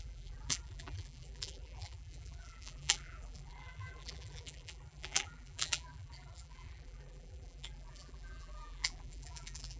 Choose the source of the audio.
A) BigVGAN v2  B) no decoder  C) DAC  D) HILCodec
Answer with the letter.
A